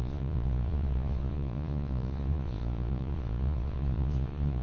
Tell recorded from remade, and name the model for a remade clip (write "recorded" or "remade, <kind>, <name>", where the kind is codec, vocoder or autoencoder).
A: remade, vocoder, Vocos